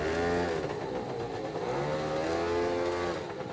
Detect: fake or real real